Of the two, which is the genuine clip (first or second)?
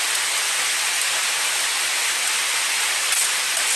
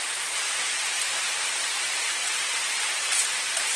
first